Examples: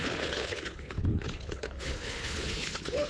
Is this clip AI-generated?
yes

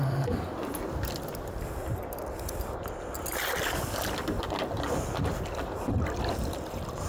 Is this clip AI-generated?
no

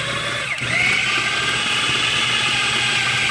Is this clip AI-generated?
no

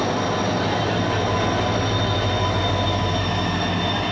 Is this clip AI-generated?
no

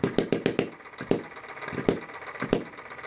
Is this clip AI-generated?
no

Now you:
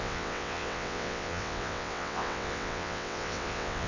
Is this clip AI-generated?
yes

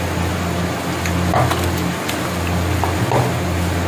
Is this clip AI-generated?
no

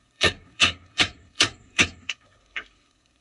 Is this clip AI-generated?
yes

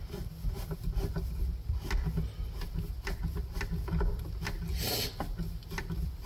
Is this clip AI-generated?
no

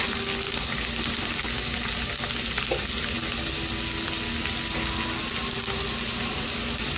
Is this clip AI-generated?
no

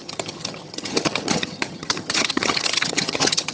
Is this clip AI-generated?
yes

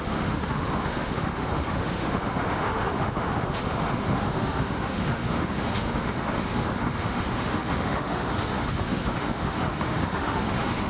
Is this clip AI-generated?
yes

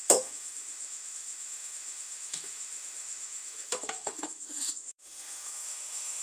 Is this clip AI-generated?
yes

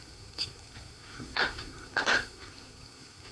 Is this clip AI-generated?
yes